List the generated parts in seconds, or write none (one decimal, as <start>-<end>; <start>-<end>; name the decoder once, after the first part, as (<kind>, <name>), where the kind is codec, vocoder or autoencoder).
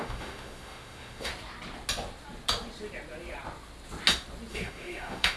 0.0-1.3 (autoencoder, DAC-VAE); 4.5-5.4